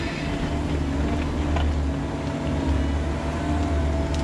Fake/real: real